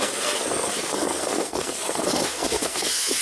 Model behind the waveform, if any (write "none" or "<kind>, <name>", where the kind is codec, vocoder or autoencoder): codec, SNAC